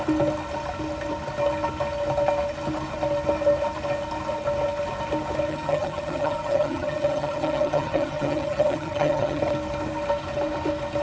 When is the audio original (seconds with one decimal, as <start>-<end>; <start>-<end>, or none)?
0.0-5.5; 9.4-11.0